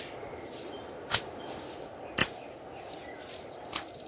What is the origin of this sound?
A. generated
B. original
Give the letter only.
B